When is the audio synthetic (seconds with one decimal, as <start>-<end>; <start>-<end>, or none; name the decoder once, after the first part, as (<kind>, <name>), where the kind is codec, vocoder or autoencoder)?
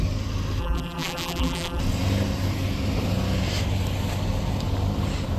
0.6-1.8 (vocoder, BigVGAN v2)